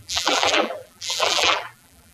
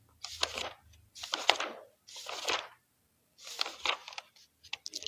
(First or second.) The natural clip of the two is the second